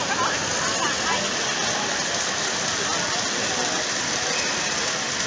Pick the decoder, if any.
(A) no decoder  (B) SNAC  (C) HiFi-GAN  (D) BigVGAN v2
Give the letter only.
A